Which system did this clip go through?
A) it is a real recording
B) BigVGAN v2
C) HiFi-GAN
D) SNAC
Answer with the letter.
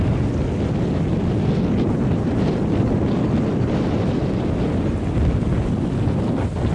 A